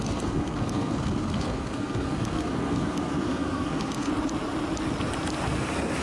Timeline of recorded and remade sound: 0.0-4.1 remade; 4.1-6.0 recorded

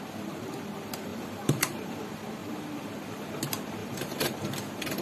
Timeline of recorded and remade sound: 0.0-1.1 recorded; 1.1-2.0 remade; 2.0-3.8 recorded; 3.8-4.4 remade; 4.4-5.0 recorded

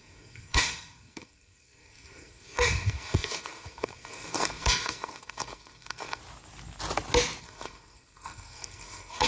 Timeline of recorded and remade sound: 0.0-6.2 remade; 6.2-7.4 recorded; 7.4-9.3 remade

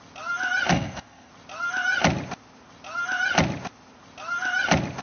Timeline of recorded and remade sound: 0.0-0.7 recorded; 0.7-1.3 remade; 1.3-5.0 recorded